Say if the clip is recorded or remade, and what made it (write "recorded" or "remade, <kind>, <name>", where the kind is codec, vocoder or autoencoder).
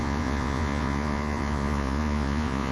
remade, vocoder, Vocos